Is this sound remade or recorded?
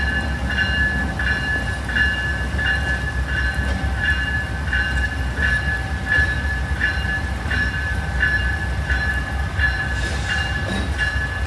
recorded